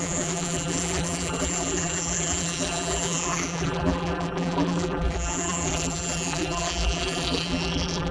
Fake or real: fake